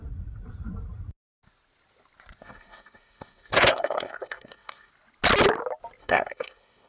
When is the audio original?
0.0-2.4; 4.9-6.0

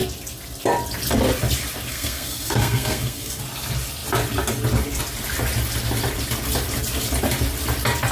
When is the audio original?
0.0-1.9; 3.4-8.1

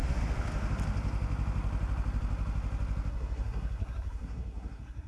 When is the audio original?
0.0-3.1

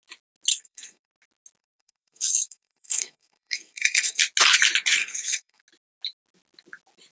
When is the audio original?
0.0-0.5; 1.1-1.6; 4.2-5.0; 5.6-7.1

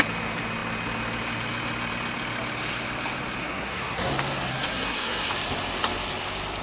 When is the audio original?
0.0-3.4; 4.1-4.5; 5.3-6.6